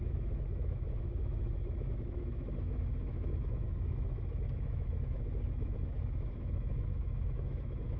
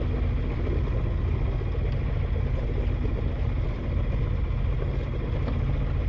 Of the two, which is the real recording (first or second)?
second